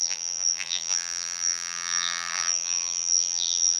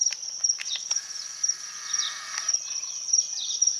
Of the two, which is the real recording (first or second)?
second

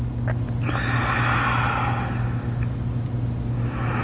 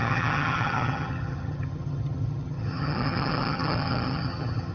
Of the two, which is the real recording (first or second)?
first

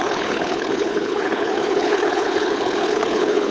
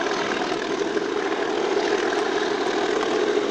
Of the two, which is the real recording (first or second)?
second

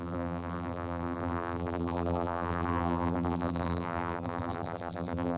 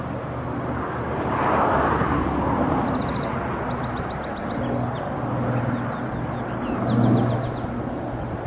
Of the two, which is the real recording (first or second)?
second